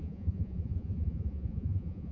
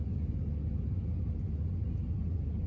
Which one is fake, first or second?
first